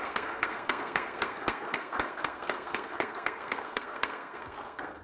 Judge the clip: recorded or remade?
remade